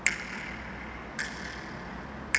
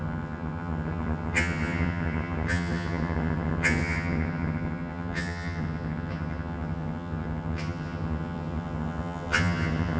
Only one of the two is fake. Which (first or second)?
second